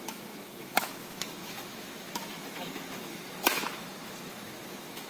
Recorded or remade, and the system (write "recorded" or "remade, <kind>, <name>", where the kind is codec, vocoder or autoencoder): remade, autoencoder, DAC-VAE